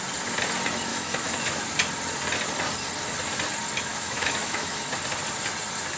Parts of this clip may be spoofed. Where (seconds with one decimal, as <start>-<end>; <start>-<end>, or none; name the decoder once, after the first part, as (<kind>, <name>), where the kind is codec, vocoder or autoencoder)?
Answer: 0.9-1.6 (autoencoder, DAC-VAE); 3.9-4.8